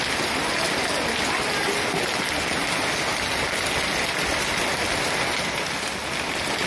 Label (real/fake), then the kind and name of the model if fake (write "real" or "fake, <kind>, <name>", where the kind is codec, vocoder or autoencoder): real